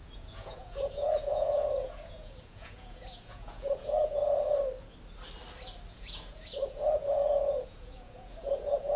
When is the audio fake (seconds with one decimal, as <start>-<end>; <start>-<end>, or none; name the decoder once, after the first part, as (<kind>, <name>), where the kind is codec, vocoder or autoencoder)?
0.0-4.2 (vocoder, Vocos); 5.9-9.0